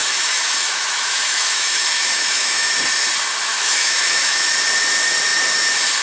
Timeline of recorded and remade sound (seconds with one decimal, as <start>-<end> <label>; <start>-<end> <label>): 0.0-2.7 remade; 2.7-3.5 recorded; 3.5-4.5 remade; 4.5-6.0 recorded